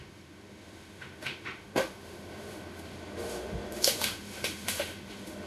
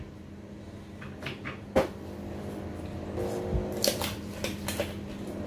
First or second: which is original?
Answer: second